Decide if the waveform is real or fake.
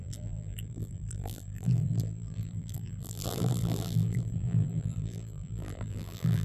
fake